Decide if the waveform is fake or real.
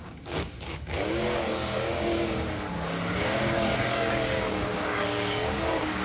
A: fake